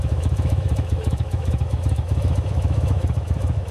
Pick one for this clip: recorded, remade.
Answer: remade